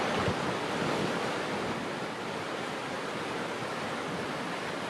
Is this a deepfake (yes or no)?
no